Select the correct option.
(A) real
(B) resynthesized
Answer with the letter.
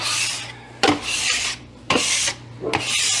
B